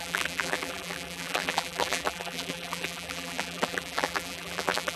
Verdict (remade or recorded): remade